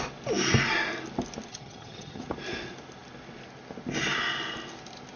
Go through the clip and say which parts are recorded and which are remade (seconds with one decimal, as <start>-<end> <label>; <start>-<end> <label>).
0.0-1.5 recorded; 1.5-2.2 remade; 2.2-5.2 recorded